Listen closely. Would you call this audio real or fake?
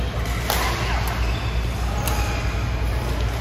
real